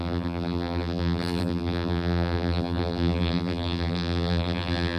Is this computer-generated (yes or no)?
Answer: yes